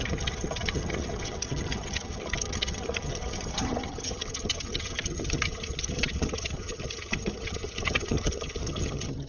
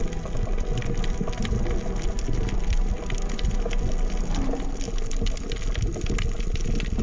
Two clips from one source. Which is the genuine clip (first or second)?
second